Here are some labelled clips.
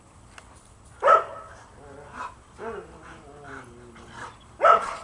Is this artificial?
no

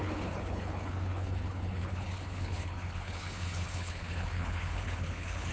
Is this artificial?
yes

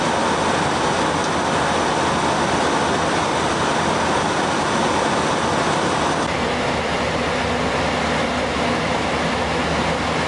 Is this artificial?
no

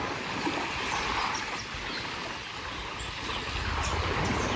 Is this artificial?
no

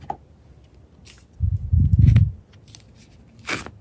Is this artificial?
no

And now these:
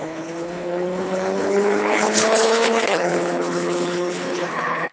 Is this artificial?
yes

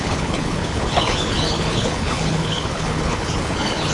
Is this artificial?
yes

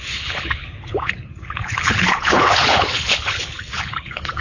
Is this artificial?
yes